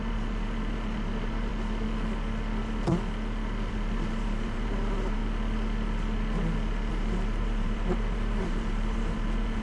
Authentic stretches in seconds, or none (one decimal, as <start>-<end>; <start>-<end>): 1.5-3.7; 5.2-6.9